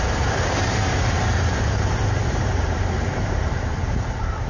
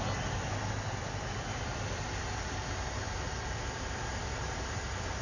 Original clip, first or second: second